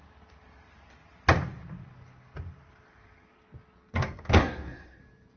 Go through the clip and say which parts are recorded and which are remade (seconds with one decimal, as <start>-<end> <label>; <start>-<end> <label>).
0.0-4.4 recorded; 4.4-5.0 remade; 5.0-5.4 recorded